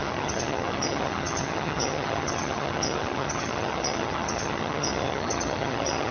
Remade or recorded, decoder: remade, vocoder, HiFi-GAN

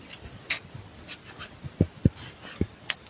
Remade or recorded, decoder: recorded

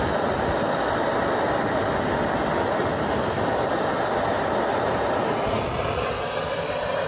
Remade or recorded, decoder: recorded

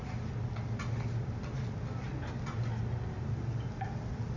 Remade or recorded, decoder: recorded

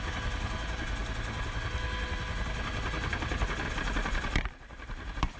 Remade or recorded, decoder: recorded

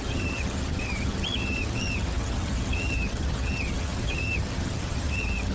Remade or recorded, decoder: remade, vocoder, HiFi-GAN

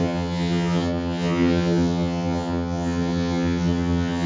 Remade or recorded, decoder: remade, vocoder, HiFi-GAN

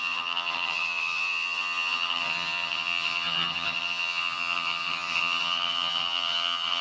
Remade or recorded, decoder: remade, vocoder, HiFi-GAN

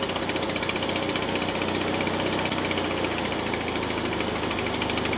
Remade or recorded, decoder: recorded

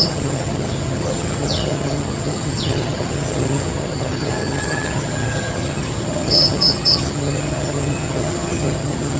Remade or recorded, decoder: remade, vocoder, HiFi-GAN